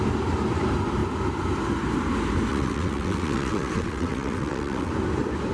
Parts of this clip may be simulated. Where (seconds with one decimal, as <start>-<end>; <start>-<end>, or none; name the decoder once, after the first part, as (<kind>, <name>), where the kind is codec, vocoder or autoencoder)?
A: 2.5-4.9 (vocoder, WaveNeXt)